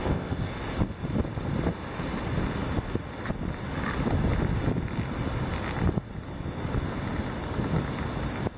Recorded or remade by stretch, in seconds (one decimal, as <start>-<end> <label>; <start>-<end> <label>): 0.0-0.5 remade; 0.5-8.6 recorded